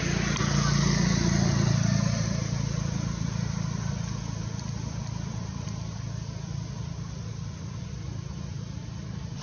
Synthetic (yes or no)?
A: no